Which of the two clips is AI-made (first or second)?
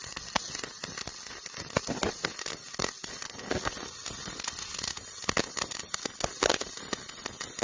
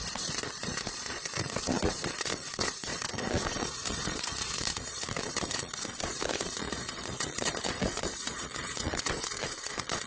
second